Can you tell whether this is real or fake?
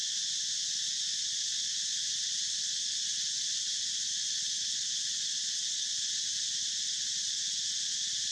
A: real